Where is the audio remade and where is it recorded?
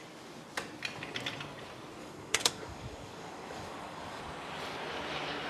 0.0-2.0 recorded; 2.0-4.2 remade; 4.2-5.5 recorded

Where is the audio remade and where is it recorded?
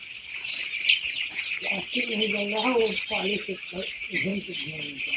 0.0-5.2 recorded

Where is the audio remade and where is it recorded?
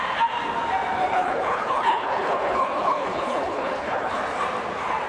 0.0-1.1 recorded; 1.1-4.2 remade; 4.2-5.1 recorded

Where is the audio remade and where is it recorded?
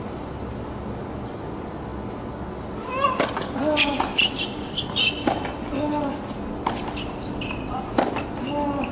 0.0-8.9 recorded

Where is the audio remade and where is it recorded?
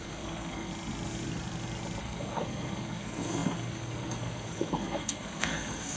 0.0-0.7 remade; 0.7-2.0 recorded; 2.0-6.0 remade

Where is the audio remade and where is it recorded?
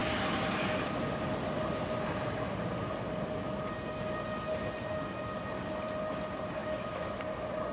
0.0-6.6 recorded; 6.6-7.2 remade; 7.2-7.7 recorded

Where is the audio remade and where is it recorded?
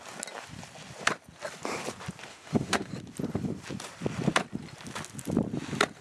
0.0-2.3 recorded; 2.3-2.9 remade; 2.9-6.0 recorded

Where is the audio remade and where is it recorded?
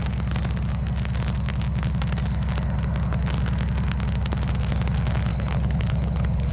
0.0-5.3 recorded; 5.3-6.5 remade